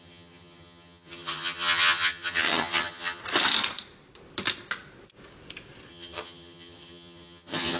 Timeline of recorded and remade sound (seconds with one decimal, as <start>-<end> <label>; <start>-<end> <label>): 0.0-3.2 remade; 3.2-5.9 recorded; 5.9-7.8 remade